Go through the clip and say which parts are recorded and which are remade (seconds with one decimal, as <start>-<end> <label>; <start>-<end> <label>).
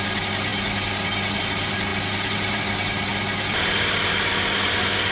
0.0-1.9 recorded; 1.9-2.6 remade; 2.6-5.1 recorded